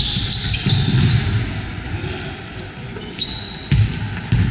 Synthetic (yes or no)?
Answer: no